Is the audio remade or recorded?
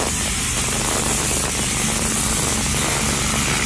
recorded